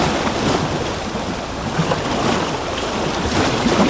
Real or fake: real